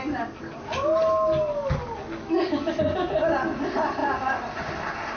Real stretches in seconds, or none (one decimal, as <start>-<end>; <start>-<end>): 0.0-1.5; 2.7-5.2